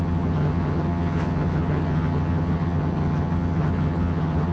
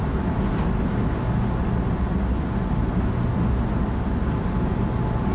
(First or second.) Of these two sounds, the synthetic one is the first